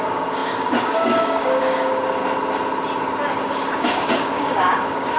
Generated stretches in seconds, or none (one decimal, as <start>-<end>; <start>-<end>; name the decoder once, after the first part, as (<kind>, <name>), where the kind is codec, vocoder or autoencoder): 0.0-2.2 (codec, DAC); 3.4-5.2